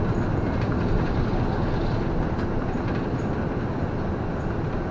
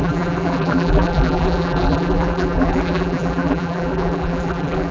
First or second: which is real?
first